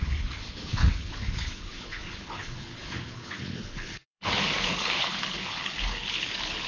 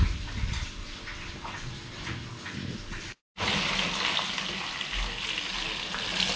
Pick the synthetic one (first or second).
first